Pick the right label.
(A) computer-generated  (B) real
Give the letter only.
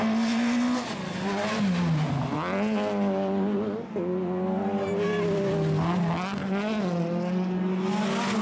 B